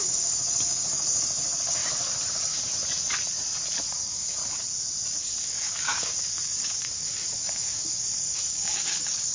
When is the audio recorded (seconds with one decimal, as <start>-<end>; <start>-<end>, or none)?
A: 1.8-2.3; 2.7-3.9; 4.4-5.2